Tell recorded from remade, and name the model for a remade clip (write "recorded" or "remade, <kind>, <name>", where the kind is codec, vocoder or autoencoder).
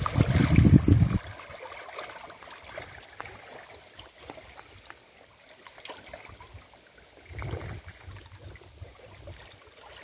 recorded